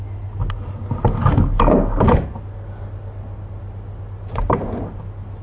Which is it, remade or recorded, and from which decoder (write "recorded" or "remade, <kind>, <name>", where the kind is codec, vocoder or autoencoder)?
recorded